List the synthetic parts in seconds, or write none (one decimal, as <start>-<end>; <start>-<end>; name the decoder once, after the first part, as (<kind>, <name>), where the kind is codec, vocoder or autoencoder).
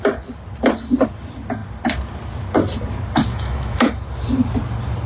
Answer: 3.3-3.9 (autoencoder, DAC-VAE)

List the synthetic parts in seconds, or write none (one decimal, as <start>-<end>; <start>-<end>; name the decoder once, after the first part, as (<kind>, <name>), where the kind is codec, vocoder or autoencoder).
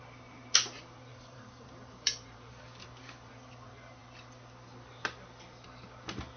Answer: 1.1-2.6 (vocoder, BigVGAN v2)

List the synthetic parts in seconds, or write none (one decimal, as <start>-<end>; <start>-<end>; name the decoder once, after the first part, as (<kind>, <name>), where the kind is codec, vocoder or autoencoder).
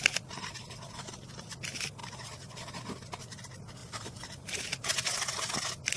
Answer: 2.0-2.8 (vocoder, BigVGAN v2); 3.8-4.6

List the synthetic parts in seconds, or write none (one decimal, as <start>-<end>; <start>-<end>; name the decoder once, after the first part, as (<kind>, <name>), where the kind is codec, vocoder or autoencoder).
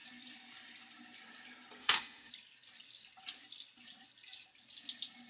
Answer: 1.8-2.3 (autoencoder, DAC-VAE)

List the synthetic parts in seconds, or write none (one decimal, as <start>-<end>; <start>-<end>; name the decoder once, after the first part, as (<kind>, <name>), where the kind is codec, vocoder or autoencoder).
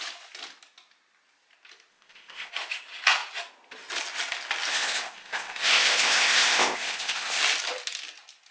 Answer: 1.9-2.5 (codec, ZipCodec); 4.7-7.4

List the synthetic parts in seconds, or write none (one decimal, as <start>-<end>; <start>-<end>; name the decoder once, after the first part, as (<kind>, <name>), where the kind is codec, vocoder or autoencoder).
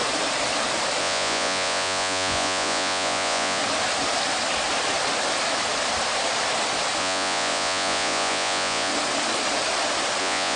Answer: 1.0-3.6 (vocoder, Vocos); 7.0-8.9; 10.2-10.6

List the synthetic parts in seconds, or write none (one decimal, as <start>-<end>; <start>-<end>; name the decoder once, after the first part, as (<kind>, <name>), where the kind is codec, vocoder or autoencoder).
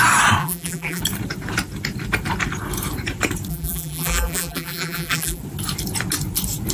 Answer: 0.4-1.0 (vocoder, BigVGAN v2); 3.5-5.4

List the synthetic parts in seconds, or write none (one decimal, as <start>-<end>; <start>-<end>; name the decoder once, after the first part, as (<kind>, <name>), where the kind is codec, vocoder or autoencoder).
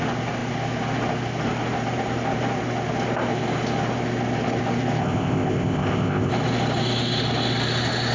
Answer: 5.0-6.3 (codec, ZipCodec)